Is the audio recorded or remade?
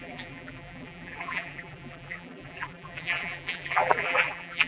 remade